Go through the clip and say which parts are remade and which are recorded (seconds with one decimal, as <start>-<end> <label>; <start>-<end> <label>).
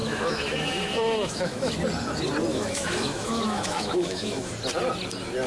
0.0-1.7 remade; 1.7-2.5 recorded; 2.5-4.5 remade; 4.5-5.5 recorded